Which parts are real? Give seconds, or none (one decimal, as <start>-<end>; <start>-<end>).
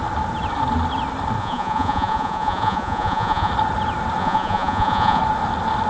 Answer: 0.0-1.4; 3.5-4.2; 5.2-5.9